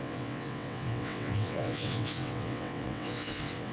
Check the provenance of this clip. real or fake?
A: fake